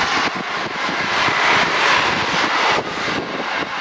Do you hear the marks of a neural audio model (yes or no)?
no